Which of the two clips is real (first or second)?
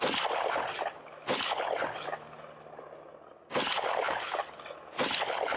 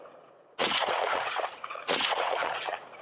first